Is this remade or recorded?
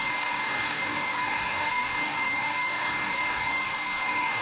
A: remade